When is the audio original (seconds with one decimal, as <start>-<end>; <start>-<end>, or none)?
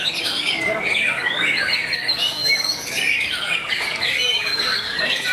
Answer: none